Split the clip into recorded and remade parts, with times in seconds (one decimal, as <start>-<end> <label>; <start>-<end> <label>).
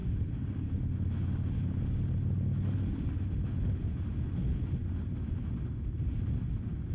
0.0-0.5 remade; 0.5-6.9 recorded